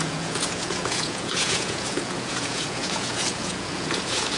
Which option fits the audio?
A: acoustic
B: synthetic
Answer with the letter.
B